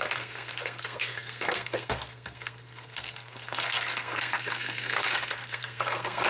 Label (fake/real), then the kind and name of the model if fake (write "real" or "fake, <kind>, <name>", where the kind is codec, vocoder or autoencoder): fake, codec, SNAC